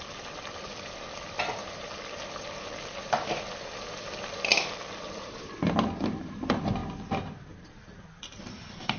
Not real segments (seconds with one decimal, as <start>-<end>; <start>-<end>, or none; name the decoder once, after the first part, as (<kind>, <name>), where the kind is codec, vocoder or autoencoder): 0.0-4.5 (vocoder, BigVGAN v2); 5.0-9.0